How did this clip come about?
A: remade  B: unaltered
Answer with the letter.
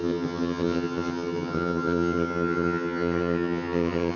A